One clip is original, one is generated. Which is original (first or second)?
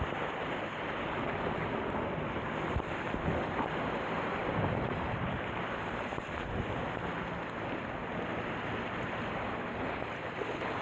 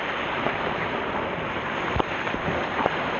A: first